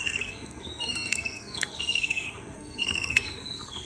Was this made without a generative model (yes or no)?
no